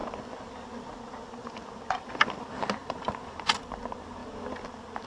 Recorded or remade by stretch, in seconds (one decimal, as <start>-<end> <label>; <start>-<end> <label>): 0.0-2.8 recorded; 2.8-3.6 remade; 3.6-5.1 recorded